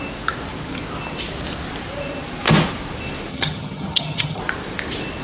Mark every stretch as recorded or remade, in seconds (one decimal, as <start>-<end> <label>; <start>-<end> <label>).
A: 0.0-3.3 recorded; 3.3-4.4 remade; 4.4-5.2 recorded

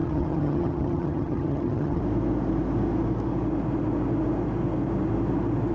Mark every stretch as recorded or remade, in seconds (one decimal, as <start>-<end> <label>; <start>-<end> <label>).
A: 0.0-2.0 remade; 2.0-5.7 recorded